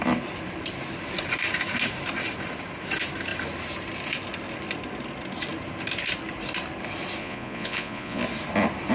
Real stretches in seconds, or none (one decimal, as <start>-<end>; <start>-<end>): 0.0-7.2; 8.2-8.9